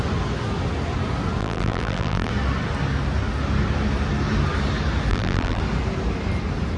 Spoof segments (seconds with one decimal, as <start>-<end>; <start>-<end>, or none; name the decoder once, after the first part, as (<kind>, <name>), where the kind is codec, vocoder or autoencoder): 1.4-2.3 (vocoder, BigVGAN v2); 5.1-5.6